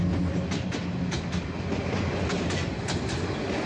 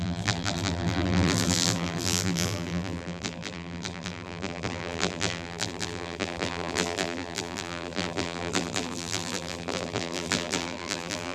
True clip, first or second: first